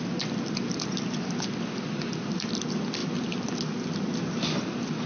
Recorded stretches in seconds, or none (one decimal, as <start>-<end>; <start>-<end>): 0.0-5.1